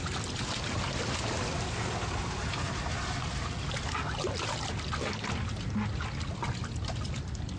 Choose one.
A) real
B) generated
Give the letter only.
A